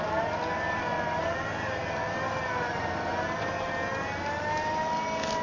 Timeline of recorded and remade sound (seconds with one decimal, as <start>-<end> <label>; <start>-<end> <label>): 0.0-5.4 recorded